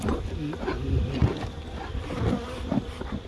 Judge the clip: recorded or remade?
recorded